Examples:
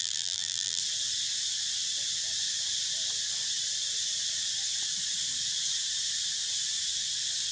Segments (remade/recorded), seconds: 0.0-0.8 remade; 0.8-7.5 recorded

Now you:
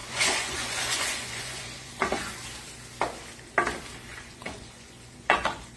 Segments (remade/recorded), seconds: 0.0-2.4 remade; 2.4-4.1 recorded; 4.1-5.8 remade

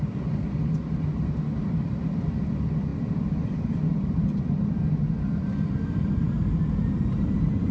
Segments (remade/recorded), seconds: 0.0-7.7 recorded

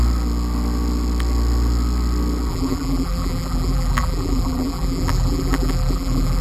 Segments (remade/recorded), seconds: 0.0-2.5 recorded; 2.5-6.4 remade

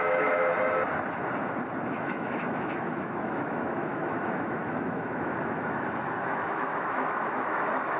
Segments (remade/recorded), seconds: 0.0-0.5 remade; 0.5-1.8 recorded; 1.8-8.0 remade

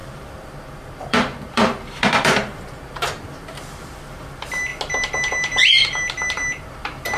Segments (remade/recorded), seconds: 0.0-4.7 remade; 4.7-5.7 recorded; 5.7-7.2 remade